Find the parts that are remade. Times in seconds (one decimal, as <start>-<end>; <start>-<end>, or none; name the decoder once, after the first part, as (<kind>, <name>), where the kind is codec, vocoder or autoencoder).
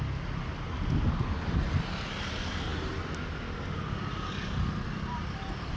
none